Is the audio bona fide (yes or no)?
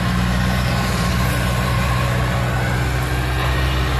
yes